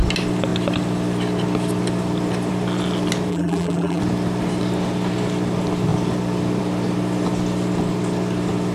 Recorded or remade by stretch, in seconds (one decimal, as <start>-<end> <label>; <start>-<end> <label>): 0.0-3.3 recorded; 3.3-4.0 remade; 4.0-8.7 recorded